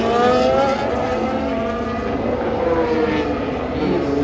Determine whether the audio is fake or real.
real